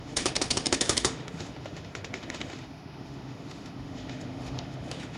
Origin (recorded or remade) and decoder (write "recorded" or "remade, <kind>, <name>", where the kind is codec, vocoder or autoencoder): remade, autoencoder, DAC-VAE